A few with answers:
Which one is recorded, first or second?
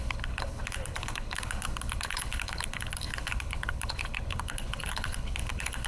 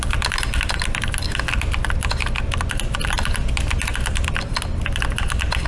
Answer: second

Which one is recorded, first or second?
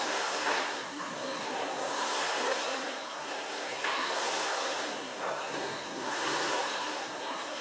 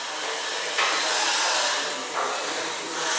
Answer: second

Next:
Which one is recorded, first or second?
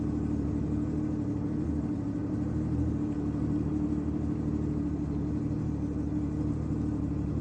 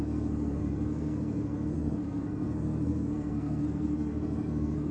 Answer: first